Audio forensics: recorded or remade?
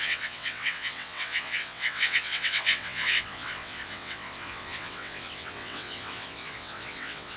remade